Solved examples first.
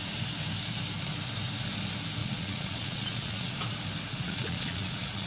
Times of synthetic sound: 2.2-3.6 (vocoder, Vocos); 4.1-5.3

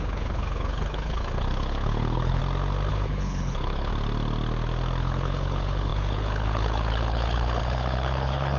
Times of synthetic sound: 0.0-2.4 (codec, HILCodec); 2.9-3.9; 5.0-8.6

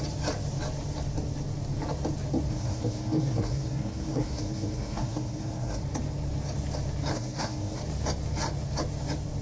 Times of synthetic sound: 2.5-5.8 (codec, SNAC); 7.1-7.8

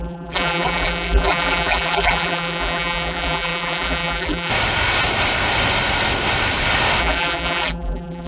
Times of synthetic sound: 0.0-4.5 (vocoder, BigVGAN v2); 7.0-8.3

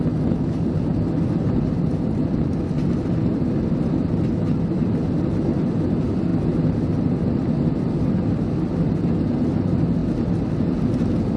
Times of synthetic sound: none

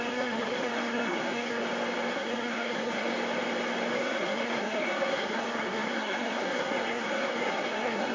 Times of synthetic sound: 0.0-1.6 (codec, SNAC); 2.1-3.1; 3.9-8.1

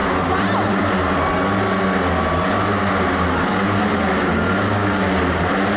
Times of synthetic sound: 0.0-0.9 (vocoder, BigVGAN v2)